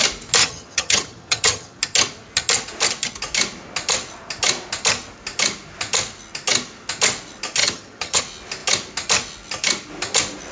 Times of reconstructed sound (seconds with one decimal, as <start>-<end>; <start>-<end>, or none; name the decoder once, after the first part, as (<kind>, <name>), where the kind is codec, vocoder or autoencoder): 0.4-1.8 (vocoder, HiFi-GAN); 7.6-8.2